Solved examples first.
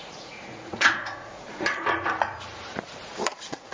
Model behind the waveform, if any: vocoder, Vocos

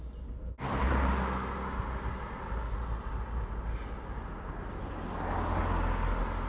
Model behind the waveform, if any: none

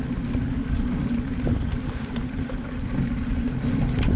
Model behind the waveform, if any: none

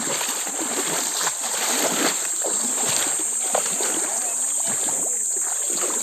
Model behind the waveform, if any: none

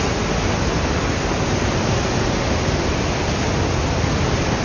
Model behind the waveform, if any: none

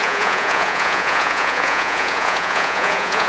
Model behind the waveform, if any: vocoder, Vocos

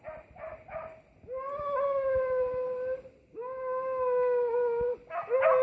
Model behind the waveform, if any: none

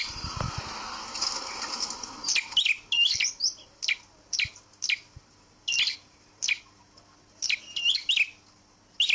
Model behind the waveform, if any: none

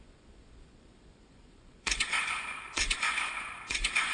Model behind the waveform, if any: vocoder, Vocos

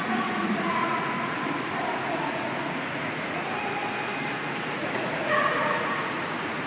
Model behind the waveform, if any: vocoder, Vocos